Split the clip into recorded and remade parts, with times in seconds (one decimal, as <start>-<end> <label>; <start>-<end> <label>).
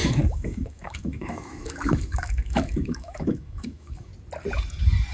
0.0-4.1 remade; 4.1-5.1 recorded